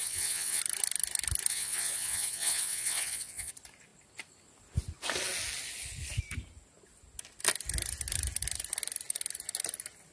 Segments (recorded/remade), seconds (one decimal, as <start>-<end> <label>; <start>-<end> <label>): 0.0-0.6 remade; 0.6-1.5 recorded; 1.5-3.5 remade; 3.5-10.1 recorded